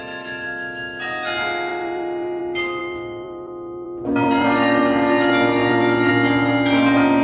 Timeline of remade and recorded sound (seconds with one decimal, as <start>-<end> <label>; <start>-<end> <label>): 0.0-1.7 recorded; 1.7-2.4 remade; 2.4-2.8 recorded; 2.8-4.8 remade; 4.8-5.6 recorded; 5.6-6.1 remade; 6.1-7.2 recorded